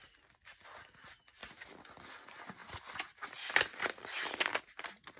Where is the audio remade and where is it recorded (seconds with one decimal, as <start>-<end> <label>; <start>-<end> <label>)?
0.0-1.4 recorded; 1.4-2.1 remade; 2.1-5.2 recorded